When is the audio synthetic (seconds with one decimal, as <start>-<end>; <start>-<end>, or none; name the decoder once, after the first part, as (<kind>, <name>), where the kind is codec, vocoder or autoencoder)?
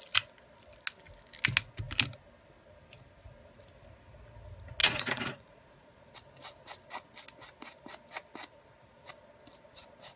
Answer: 4.8-6.1 (vocoder, Vocos)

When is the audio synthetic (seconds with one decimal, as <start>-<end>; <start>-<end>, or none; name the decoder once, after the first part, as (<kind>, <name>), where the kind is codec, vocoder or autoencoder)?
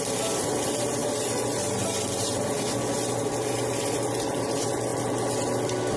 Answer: none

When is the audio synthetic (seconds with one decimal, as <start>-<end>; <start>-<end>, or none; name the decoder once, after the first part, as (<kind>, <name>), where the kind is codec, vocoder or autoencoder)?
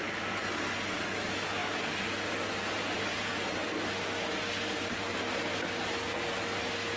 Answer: 5.1-6.4 (vocoder, BigVGAN v2)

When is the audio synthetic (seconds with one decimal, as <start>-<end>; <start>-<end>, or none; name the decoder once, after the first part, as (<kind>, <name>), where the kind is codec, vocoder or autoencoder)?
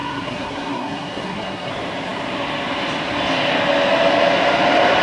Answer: 0.0-1.7 (codec, SNAC)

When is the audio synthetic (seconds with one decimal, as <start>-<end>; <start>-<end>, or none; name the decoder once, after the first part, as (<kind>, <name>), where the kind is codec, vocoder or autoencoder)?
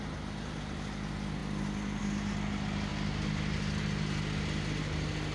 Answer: 2.9-3.6 (vocoder, BigVGAN v2)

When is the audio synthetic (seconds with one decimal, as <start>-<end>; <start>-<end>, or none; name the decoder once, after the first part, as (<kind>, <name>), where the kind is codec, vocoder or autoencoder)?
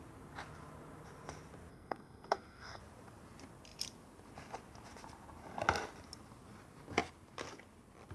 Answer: 1.7-2.8 (codec, SNAC)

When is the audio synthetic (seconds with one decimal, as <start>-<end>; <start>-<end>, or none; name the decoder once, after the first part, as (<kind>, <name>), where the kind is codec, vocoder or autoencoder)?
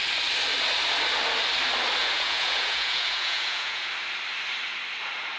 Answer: 2.0-3.9 (vocoder, Vocos)